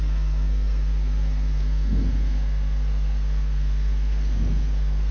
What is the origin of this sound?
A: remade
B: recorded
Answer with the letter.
A